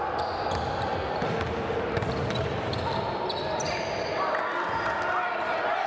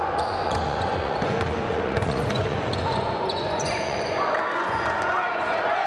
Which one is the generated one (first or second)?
second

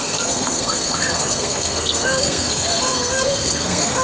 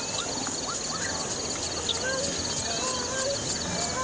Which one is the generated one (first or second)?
first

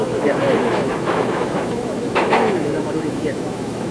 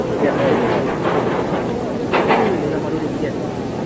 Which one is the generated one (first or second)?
first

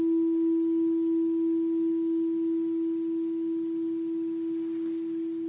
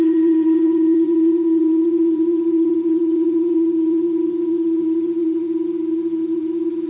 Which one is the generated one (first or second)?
second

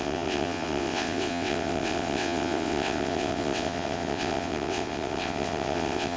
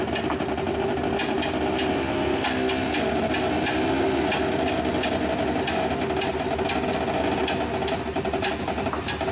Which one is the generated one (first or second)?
first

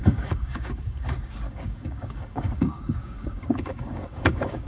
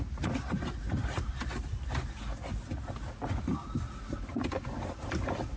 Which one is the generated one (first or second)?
first